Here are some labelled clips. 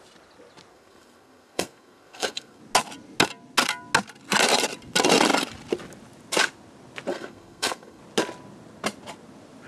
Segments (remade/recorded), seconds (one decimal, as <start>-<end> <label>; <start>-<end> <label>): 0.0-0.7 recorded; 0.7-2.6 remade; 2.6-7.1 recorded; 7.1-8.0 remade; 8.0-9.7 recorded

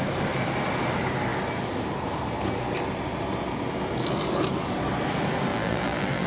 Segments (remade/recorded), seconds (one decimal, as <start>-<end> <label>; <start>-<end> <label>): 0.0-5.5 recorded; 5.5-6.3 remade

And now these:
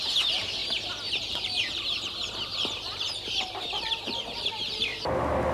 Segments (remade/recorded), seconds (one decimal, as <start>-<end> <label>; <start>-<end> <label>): 0.0-0.6 remade; 0.6-1.2 recorded; 1.2-4.9 remade; 4.9-5.5 recorded

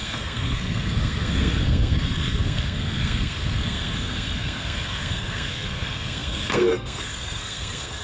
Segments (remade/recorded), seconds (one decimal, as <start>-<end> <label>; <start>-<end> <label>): 0.0-8.0 remade

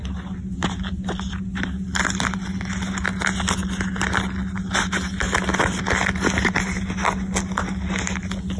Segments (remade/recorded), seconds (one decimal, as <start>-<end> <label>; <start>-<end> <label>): 0.0-8.6 recorded